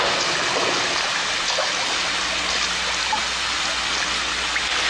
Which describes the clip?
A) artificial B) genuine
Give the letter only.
B